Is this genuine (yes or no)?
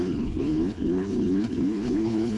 no